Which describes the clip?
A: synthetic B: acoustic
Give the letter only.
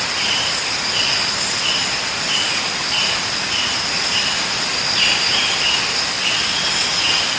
B